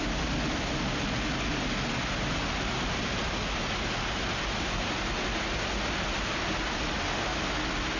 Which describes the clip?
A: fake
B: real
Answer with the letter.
B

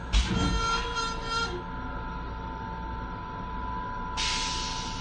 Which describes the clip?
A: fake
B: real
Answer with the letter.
B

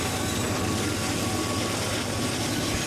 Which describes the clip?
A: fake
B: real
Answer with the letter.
B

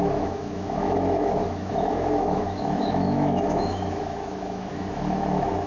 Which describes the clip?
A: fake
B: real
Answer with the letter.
A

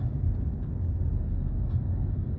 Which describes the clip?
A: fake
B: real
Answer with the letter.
A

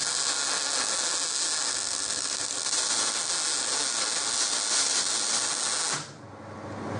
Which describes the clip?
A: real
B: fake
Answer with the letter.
A